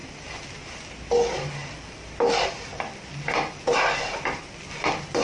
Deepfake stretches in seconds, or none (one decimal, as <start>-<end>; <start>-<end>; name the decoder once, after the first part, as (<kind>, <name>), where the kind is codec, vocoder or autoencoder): 1.6-4.6 (vocoder, BigVGAN v2)